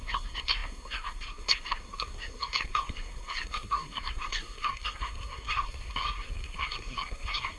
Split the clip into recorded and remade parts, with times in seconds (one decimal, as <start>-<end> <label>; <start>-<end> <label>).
0.0-7.6 remade